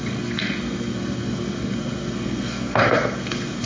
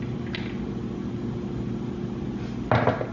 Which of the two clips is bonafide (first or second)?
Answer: second